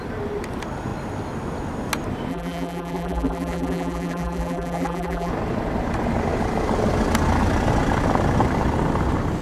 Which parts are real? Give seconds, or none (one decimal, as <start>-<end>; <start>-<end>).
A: 0.0-2.3; 5.3-9.4